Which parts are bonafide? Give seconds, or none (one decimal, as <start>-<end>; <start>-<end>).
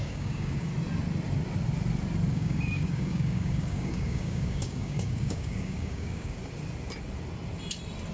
0.7-2.3; 6.4-8.1